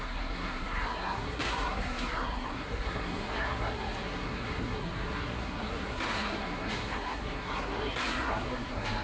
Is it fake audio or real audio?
fake